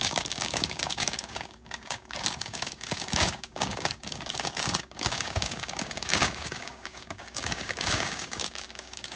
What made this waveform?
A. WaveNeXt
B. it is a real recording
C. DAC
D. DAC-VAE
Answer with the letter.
C